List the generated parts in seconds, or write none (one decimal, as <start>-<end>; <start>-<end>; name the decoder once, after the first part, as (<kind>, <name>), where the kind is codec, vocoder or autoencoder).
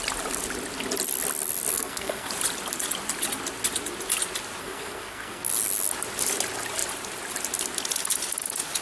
1.7-2.3 (codec, SNAC); 4.6-5.5